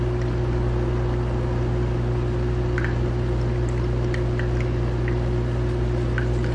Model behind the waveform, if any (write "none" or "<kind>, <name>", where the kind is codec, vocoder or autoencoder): none